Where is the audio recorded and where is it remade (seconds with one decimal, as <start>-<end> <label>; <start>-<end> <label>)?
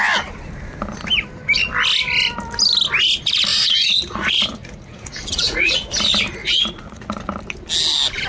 0.0-3.5 recorded; 3.5-5.9 remade; 5.9-6.4 recorded; 6.4-7.2 remade; 7.2-8.3 recorded